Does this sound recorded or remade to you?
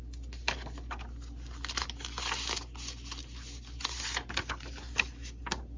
recorded